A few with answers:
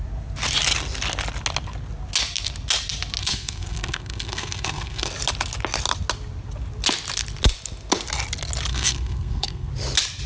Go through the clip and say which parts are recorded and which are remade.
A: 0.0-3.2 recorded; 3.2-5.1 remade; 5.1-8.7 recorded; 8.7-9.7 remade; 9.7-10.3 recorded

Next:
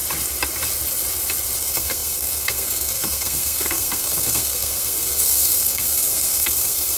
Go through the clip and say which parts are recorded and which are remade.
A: 0.0-1.6 recorded; 1.6-7.0 remade